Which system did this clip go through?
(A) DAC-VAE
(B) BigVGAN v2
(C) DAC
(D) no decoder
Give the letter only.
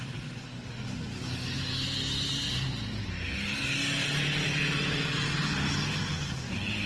D